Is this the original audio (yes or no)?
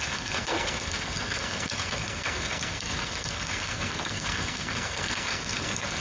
no